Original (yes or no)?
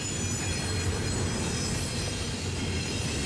yes